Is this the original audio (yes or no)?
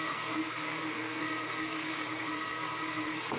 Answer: no